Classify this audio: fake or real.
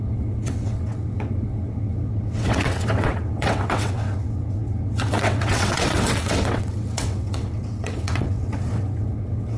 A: fake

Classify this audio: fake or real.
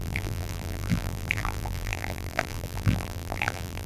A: fake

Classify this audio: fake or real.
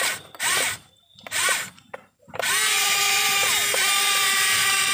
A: fake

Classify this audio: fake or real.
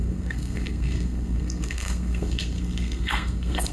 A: fake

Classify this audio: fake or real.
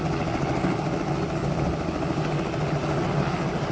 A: real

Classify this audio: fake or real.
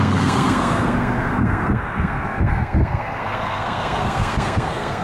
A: fake